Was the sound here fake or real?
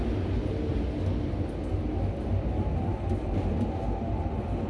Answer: real